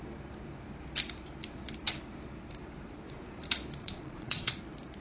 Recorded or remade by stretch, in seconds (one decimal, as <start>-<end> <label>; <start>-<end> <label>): 0.0-3.8 recorded; 3.8-4.6 remade; 4.6-5.0 recorded